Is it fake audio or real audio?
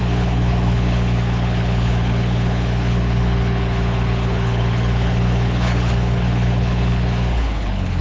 fake